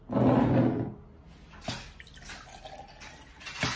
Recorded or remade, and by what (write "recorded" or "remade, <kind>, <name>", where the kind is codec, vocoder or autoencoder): recorded